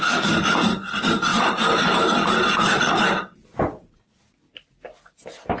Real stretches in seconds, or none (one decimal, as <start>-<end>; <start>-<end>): 0.0-5.6